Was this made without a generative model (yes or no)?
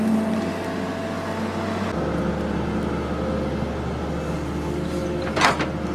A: yes